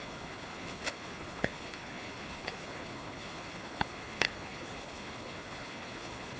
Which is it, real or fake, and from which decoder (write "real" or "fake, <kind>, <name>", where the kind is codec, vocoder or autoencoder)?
fake, codec, HILCodec